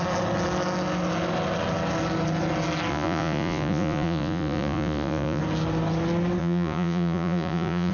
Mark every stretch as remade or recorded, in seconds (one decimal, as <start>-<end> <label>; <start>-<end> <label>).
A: 0.0-2.9 recorded; 2.9-5.4 remade; 5.4-6.4 recorded; 6.4-7.9 remade